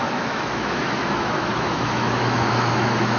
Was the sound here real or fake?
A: fake